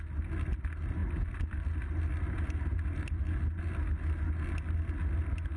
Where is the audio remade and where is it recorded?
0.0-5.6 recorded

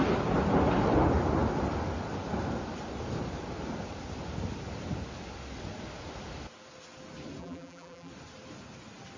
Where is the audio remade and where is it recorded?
0.0-7.4 recorded; 7.4-8.1 remade; 8.1-9.2 recorded

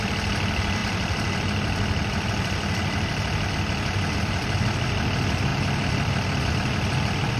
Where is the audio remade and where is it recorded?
0.0-7.4 recorded

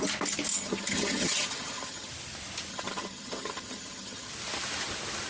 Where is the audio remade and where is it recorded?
0.0-0.5 recorded; 0.5-2.1 remade; 2.1-2.7 recorded; 2.7-4.3 remade; 4.3-5.3 recorded

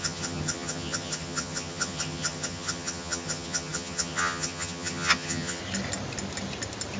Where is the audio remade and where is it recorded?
0.0-5.6 remade; 5.6-7.0 recorded